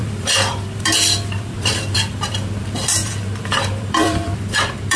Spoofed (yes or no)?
yes